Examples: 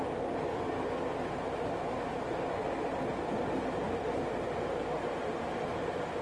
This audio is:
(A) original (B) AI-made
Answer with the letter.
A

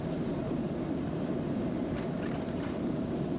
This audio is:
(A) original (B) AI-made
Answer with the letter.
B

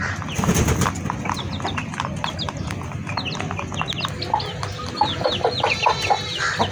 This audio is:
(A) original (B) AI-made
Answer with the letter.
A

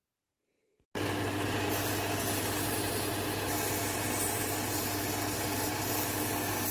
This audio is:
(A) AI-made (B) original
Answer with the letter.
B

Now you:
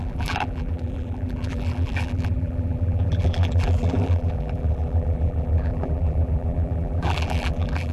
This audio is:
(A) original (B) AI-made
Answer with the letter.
B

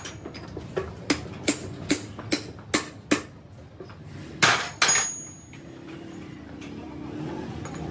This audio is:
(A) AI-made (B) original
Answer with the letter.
B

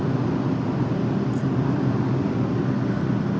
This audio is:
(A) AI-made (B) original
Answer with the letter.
B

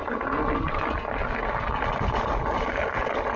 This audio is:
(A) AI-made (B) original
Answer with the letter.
B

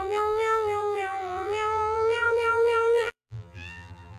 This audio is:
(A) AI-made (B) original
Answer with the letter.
A